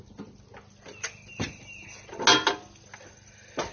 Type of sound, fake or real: real